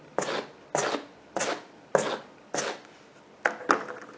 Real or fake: real